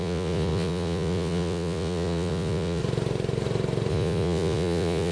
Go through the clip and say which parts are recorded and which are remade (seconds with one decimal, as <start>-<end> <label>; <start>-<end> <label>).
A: 0.0-2.8 remade; 2.8-3.9 recorded; 3.9-5.1 remade